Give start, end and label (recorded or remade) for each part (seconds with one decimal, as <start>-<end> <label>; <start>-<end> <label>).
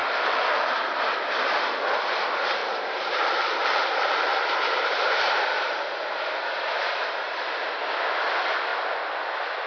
0.0-0.7 remade; 0.7-2.6 recorded; 2.6-5.4 remade; 5.4-9.7 recorded